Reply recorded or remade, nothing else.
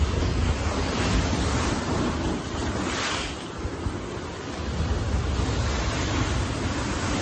recorded